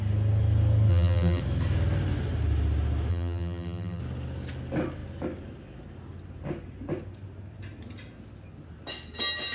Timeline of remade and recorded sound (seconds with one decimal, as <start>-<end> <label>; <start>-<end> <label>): 0.0-0.9 recorded; 0.9-1.4 remade; 1.4-3.1 recorded; 3.1-4.0 remade; 4.0-9.5 recorded